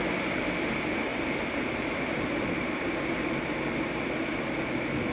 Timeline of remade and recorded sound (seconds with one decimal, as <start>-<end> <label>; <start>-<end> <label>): 0.0-1.1 recorded; 1.1-4.2 remade; 4.2-5.1 recorded